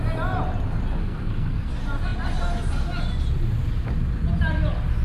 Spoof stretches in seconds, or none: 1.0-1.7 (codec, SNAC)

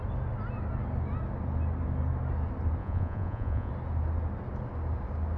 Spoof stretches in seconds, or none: 2.8-3.7 (vocoder, Vocos)